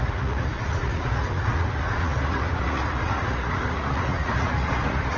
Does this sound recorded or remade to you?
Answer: remade